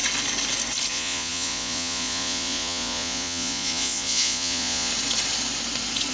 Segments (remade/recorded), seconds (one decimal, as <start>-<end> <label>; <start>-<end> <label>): 0.0-0.9 recorded; 0.9-4.9 remade; 4.9-6.1 recorded